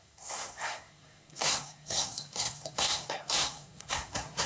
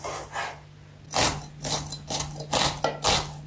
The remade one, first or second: first